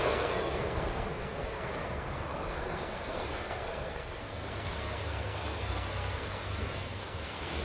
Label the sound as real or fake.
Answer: fake